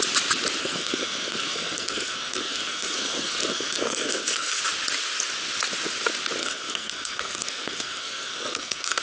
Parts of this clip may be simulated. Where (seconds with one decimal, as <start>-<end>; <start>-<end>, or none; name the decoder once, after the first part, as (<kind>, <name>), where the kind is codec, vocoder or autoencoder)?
0.6-4.6 (codec, SNAC); 6.4-9.0